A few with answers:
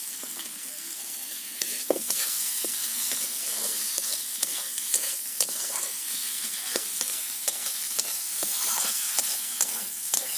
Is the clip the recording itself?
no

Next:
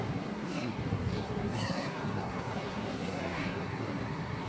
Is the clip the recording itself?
no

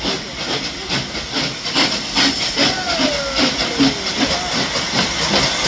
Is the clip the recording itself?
yes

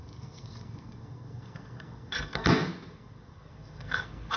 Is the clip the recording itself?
no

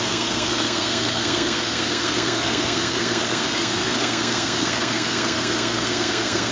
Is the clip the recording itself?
no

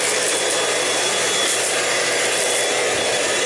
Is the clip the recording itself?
yes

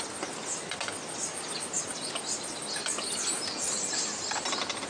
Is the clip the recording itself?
yes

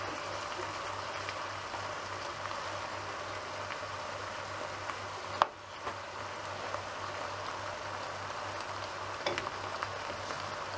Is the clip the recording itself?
yes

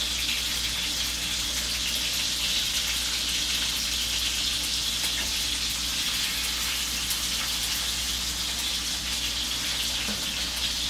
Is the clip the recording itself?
yes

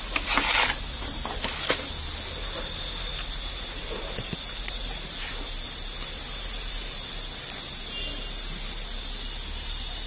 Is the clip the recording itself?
yes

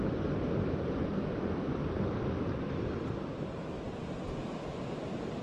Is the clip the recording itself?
yes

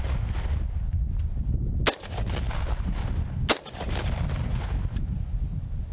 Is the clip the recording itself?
yes